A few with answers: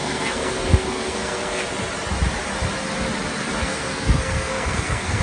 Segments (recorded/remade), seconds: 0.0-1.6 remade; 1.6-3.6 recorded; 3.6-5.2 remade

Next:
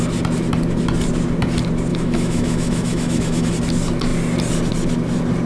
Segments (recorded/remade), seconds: 0.0-1.9 recorded; 1.9-3.5 remade; 3.5-5.5 recorded